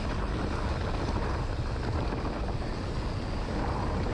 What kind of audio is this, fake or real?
real